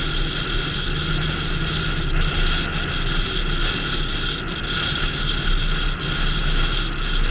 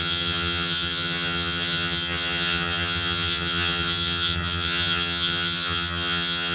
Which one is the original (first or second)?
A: first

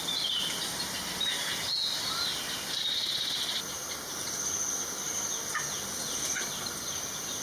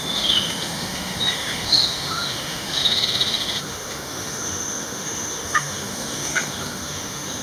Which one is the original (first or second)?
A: first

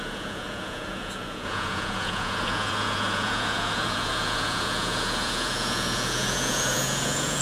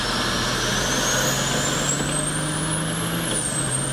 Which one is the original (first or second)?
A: second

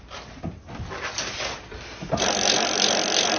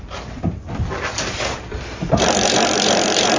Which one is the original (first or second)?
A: first